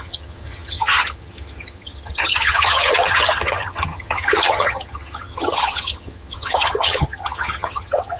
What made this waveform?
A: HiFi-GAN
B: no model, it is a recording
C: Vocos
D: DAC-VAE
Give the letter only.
A